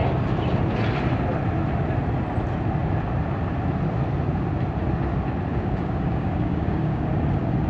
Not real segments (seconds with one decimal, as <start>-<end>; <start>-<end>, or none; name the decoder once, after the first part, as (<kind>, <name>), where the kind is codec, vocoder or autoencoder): 5.5-7.0 (codec, DAC)